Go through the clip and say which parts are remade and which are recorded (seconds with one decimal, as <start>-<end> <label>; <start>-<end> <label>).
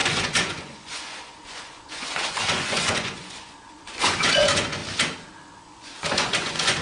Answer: 0.0-4.8 remade; 4.8-5.4 recorded; 5.4-6.8 remade